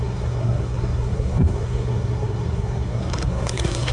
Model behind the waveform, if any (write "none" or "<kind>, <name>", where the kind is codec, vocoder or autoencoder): codec, SNAC